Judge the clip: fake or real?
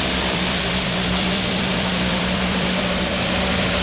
fake